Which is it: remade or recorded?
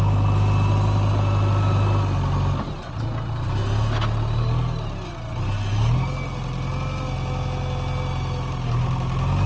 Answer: recorded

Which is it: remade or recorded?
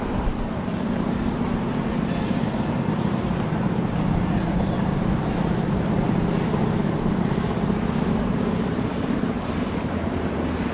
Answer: remade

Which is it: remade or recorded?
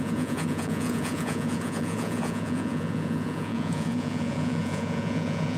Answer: remade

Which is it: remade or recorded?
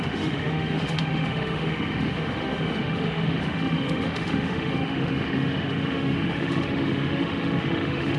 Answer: remade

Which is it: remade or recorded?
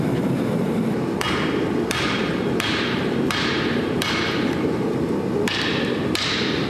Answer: remade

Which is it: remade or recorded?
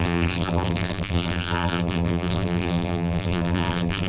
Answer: remade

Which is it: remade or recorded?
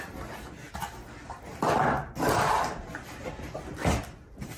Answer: recorded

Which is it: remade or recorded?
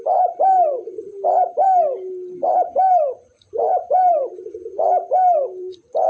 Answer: remade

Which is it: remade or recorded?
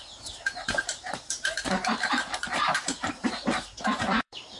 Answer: remade